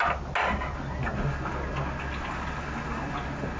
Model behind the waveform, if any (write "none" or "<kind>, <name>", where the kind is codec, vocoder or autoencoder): none